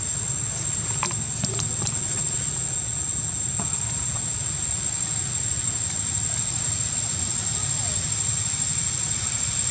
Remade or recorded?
recorded